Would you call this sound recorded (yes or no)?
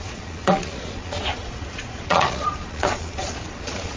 no